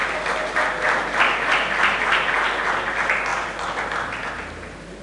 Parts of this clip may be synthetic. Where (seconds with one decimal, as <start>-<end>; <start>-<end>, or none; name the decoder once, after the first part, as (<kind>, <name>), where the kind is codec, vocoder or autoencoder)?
none